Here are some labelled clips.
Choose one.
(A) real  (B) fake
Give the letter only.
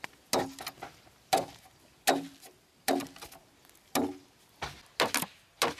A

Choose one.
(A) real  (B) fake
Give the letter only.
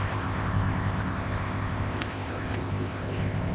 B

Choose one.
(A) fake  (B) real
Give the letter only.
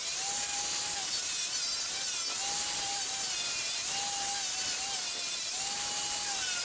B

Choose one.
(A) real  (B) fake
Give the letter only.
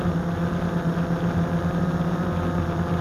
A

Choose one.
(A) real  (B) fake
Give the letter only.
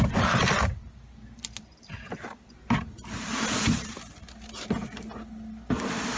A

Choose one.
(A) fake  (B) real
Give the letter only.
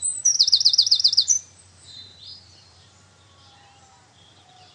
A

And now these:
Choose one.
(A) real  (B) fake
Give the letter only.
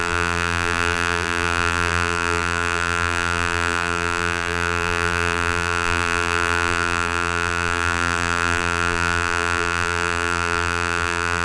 B